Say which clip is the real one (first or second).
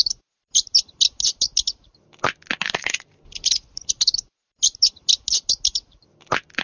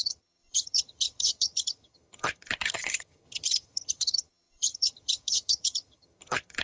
first